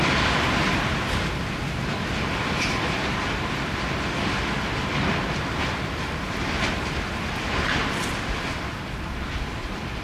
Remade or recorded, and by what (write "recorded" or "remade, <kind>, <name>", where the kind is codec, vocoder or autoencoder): recorded